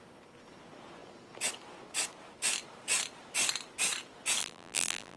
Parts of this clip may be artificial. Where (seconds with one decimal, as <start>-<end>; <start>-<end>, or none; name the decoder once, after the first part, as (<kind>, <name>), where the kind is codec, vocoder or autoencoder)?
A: 4.4-5.2 (vocoder, BigVGAN v2)